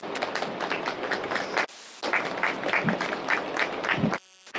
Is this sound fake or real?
real